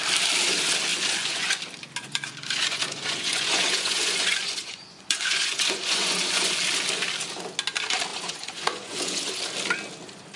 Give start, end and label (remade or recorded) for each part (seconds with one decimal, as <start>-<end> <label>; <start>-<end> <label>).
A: 0.0-0.9 recorded; 0.9-1.6 remade; 1.6-2.0 recorded; 2.0-6.6 remade; 6.6-8.1 recorded; 8.1-9.4 remade; 9.4-10.4 recorded